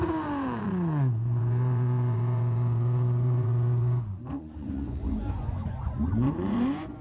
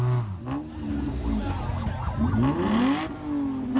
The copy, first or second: first